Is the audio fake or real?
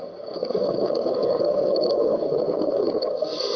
fake